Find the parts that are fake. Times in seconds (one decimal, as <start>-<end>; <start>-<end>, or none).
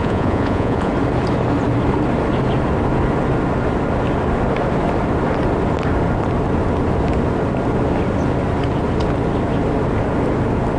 0.0-0.9